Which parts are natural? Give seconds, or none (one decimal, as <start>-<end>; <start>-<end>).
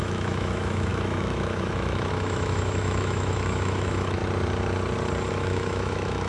4.2-5.3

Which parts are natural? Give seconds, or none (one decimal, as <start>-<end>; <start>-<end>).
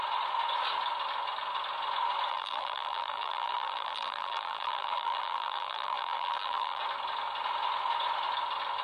0.0-2.3; 6.8-8.8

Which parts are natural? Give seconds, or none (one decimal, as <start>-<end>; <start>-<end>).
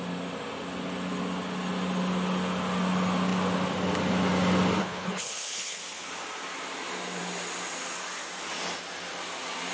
0.0-4.8; 5.8-9.7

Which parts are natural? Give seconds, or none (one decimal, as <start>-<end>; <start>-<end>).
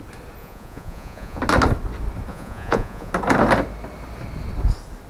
0.0-0.4; 1.4-2.3; 3.1-5.1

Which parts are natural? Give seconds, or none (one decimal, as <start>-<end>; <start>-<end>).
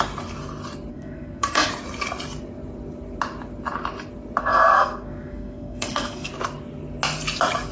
0.0-0.9; 1.7-4.4; 6.3-7.7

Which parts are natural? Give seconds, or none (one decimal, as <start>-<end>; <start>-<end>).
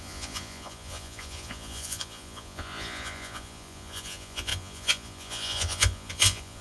none